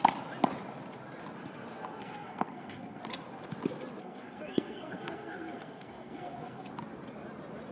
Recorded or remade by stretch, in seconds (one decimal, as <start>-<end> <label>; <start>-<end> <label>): 0.0-2.0 recorded; 2.0-3.0 remade; 3.0-4.0 recorded; 4.0-6.7 remade; 6.7-7.7 recorded